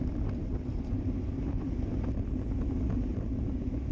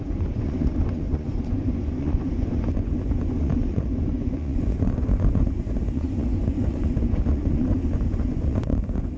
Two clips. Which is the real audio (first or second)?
first